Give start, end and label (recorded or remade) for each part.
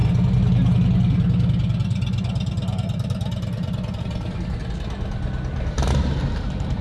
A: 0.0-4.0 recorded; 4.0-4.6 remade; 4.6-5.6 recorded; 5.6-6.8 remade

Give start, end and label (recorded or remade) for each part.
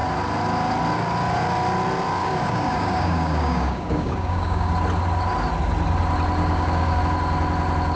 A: 0.0-2.2 recorded; 2.2-4.7 remade; 4.7-6.4 recorded; 6.4-7.0 remade; 7.0-8.0 recorded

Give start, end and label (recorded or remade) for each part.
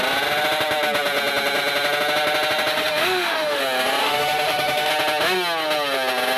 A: 0.0-2.7 recorded; 2.7-3.6 remade; 3.6-4.0 recorded; 4.0-4.9 remade; 4.9-6.4 recorded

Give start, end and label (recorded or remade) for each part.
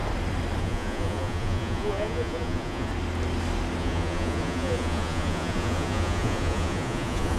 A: 0.0-0.6 recorded; 0.6-2.9 remade; 2.9-3.8 recorded; 3.8-7.4 remade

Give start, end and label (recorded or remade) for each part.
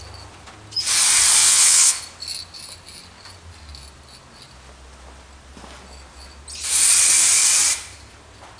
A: 0.0-1.4 recorded; 1.4-2.0 remade; 2.0-8.6 recorded